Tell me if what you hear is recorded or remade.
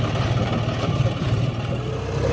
recorded